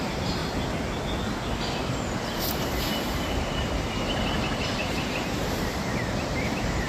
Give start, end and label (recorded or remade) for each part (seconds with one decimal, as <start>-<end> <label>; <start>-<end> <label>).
0.0-0.4 remade; 0.4-2.4 recorded; 2.4-6.9 remade